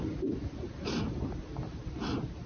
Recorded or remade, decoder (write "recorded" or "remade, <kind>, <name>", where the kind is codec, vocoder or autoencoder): recorded